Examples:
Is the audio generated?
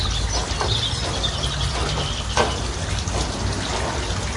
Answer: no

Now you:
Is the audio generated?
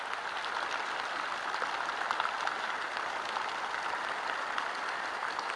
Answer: no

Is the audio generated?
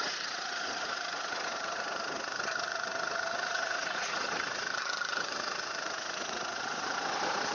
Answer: yes